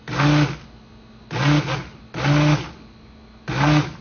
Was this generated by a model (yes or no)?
no